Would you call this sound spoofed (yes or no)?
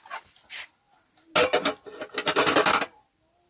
no